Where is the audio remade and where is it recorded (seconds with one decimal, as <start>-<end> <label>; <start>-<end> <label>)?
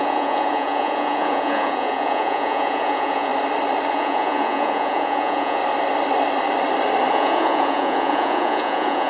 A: 0.0-3.3 remade; 3.3-3.9 recorded; 3.9-5.6 remade; 5.6-7.1 recorded; 7.1-9.1 remade